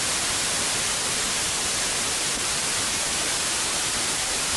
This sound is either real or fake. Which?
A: fake